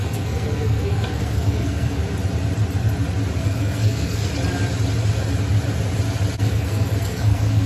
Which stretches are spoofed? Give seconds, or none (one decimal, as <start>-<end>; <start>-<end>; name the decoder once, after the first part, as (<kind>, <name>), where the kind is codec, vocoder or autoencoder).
0.0-2.0 (codec, SNAC); 3.4-4.3; 6.4-7.7